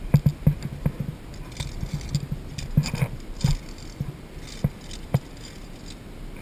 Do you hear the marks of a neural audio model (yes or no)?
no